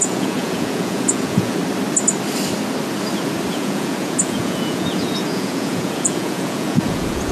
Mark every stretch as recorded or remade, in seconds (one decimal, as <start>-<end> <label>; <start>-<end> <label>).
0.0-1.6 remade; 1.6-3.5 recorded; 3.5-7.3 remade